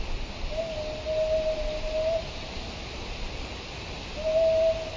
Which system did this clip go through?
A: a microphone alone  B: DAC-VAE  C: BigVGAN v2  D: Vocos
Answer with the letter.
A